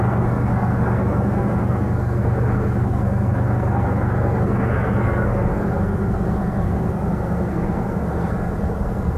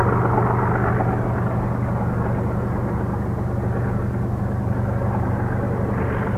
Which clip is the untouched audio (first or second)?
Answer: second